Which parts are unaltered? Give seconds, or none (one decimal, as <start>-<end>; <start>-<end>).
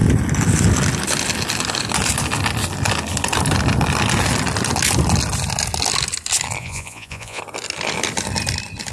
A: 0.0-6.6; 7.4-8.9